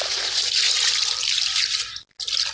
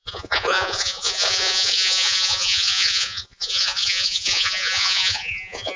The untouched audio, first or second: first